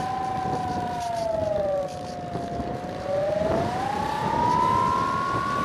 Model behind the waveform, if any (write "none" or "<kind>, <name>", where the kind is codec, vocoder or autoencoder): none